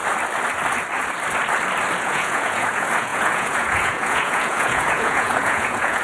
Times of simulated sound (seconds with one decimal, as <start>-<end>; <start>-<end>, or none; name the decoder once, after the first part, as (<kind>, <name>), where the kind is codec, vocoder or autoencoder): 2.0-6.0 (vocoder, Vocos)